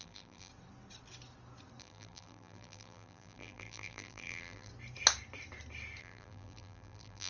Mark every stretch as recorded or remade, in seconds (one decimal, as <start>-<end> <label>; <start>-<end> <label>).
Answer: 0.0-0.5 remade; 0.5-1.8 recorded; 1.8-4.7 remade; 4.7-6.0 recorded; 6.0-7.3 remade